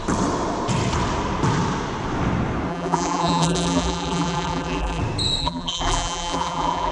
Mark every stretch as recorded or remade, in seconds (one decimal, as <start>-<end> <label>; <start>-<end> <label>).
0.0-2.7 recorded; 2.7-5.0 remade; 5.0-5.4 recorded; 5.4-6.9 remade